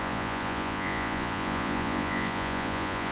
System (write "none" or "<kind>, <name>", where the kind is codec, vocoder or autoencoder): vocoder, Vocos